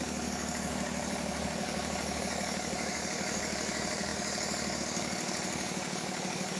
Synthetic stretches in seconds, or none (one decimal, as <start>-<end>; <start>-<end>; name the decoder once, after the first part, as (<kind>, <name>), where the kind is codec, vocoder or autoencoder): 0.0-6.6 (codec, DAC)